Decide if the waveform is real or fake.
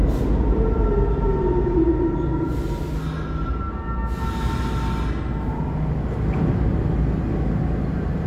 real